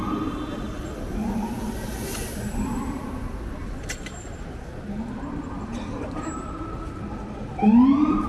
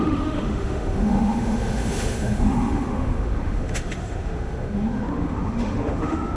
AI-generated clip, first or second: second